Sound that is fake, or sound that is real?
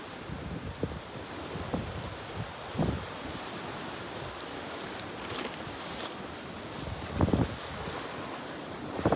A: real